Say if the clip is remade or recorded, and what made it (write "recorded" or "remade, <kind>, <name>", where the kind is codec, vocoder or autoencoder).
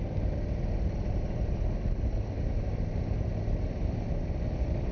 recorded